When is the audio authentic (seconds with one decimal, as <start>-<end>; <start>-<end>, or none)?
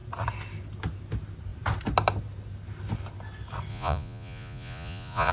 0.0-3.7